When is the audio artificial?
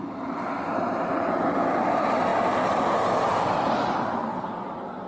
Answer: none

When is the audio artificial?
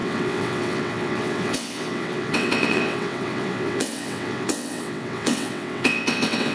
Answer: 0.0-6.5 (vocoder, WaveNeXt)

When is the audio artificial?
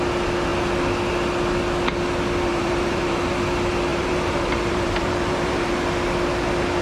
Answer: 2.5-3.2 (vocoder, BigVGAN v2); 3.9-5.7